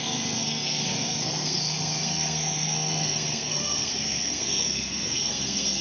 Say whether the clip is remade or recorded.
remade